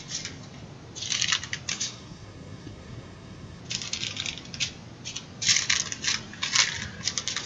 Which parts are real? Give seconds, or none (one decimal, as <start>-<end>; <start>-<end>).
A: 0.0-1.7; 3.6-7.5